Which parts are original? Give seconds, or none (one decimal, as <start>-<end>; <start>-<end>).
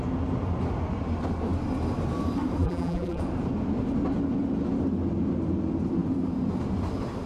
0.0-2.6; 3.2-7.3